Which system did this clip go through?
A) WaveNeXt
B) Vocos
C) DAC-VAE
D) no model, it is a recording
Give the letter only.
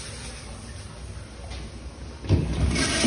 D